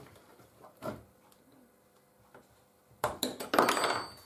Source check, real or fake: real